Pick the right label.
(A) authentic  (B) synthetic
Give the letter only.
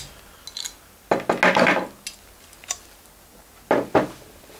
A